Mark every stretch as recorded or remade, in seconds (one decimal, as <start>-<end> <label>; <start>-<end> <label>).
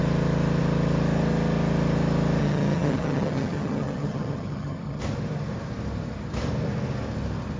0.0-2.4 recorded; 2.4-5.0 remade; 5.0-7.6 recorded